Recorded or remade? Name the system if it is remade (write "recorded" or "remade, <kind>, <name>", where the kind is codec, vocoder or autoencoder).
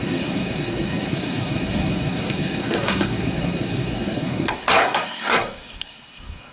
remade, codec, SNAC